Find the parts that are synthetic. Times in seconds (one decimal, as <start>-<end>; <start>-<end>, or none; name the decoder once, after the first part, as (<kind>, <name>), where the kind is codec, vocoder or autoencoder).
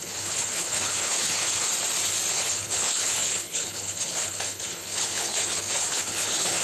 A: 0.0-1.7 (codec, HILCodec); 2.3-6.6